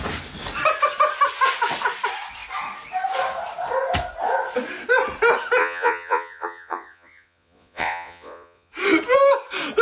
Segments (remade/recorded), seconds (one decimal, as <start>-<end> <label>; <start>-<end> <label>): 0.0-5.6 recorded; 5.6-8.7 remade; 8.7-9.8 recorded